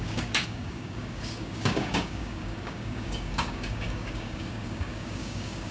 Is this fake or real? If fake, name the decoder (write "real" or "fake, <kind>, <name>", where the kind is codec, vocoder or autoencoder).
fake, codec, DAC